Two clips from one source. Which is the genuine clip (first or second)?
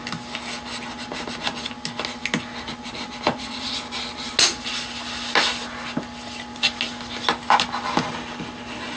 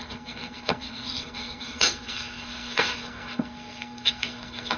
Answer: first